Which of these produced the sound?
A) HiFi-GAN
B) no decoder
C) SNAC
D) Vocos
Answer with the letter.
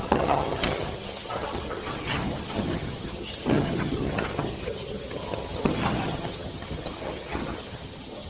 A